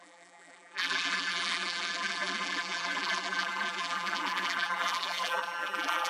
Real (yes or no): no